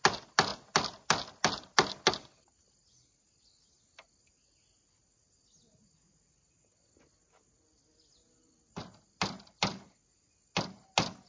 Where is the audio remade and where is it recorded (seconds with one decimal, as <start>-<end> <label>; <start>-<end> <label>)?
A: 0.0-11.3 recorded